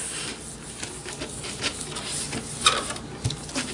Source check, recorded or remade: recorded